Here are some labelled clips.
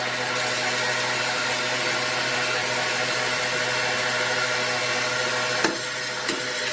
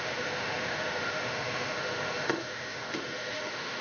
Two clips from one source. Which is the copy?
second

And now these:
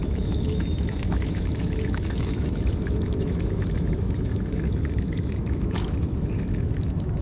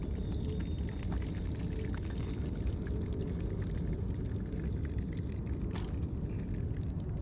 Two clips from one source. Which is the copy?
first